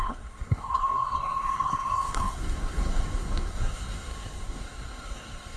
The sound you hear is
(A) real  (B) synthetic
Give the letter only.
B